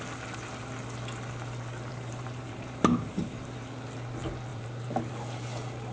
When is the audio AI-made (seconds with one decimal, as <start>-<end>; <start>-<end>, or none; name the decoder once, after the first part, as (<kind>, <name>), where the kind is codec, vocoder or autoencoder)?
1.9-3.6 (vocoder, BigVGAN v2); 4.5-5.1